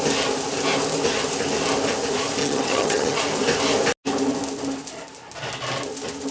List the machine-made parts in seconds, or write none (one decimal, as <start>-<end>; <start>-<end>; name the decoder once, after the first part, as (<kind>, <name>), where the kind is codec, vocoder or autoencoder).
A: 2.4-3.2 (vocoder, HiFi-GAN)